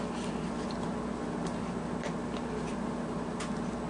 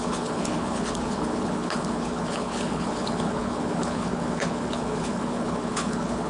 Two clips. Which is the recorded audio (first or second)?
first